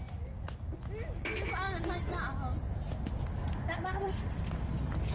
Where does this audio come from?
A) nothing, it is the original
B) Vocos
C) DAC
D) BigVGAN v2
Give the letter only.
A